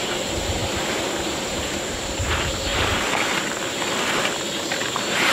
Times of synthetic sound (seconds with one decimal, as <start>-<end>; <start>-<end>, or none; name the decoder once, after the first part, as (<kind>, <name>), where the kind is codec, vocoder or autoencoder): 0.0-2.7 (vocoder, BigVGAN v2); 4.6-5.3